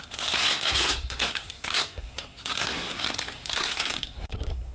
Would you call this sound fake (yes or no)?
yes